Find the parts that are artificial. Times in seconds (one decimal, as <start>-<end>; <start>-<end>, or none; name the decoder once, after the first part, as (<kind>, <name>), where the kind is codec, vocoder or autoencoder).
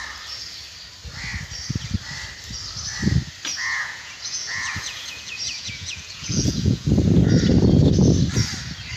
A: 3.5-6.9 (vocoder, Vocos)